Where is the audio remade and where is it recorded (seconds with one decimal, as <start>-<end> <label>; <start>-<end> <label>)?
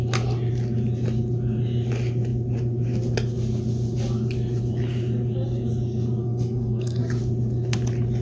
0.0-6.2 recorded; 6.2-7.0 remade; 7.0-8.2 recorded